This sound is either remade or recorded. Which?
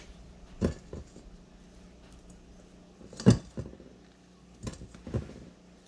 recorded